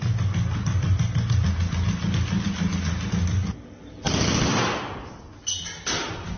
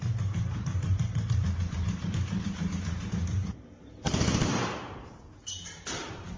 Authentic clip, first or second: first